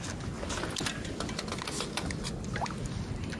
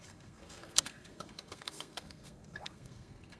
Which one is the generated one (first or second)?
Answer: second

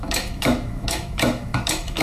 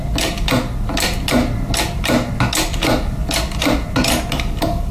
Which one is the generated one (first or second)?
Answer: first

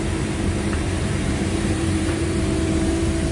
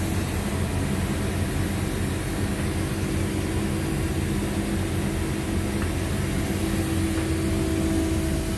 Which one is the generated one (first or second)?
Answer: first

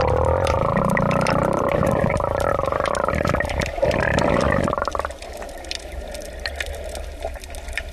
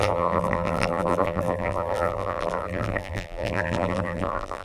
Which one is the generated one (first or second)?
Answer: second